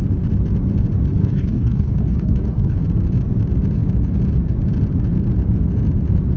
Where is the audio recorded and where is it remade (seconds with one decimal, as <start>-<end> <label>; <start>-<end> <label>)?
0.0-1.2 recorded; 1.2-2.8 remade; 2.8-6.4 recorded